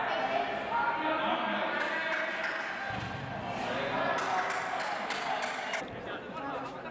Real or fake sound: real